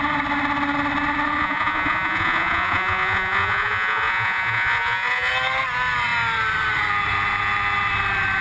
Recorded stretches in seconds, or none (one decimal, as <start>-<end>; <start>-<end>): 0.0-1.4; 5.3-8.4